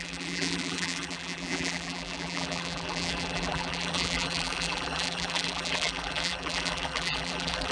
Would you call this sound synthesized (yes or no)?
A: yes